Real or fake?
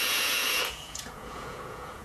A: fake